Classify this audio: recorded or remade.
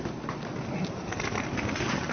recorded